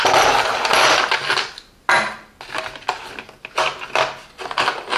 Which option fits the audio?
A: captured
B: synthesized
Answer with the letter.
A